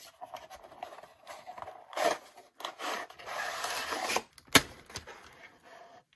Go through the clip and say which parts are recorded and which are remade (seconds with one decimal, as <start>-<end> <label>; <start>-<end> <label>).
0.0-6.2 recorded